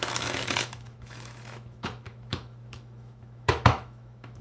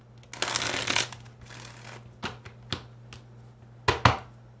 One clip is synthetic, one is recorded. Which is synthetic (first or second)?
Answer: first